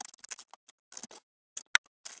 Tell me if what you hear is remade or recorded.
recorded